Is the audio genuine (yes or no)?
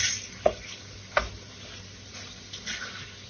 yes